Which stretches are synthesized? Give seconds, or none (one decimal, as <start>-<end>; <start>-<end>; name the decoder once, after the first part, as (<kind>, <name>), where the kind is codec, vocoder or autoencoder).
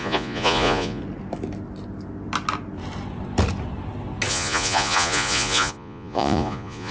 0.0-1.0 (vocoder, Vocos); 4.3-6.9